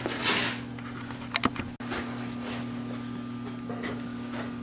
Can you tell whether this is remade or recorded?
recorded